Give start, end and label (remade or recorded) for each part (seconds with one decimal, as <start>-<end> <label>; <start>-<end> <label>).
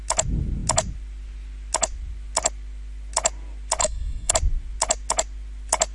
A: 0.0-3.8 recorded; 3.8-4.3 remade; 4.3-5.9 recorded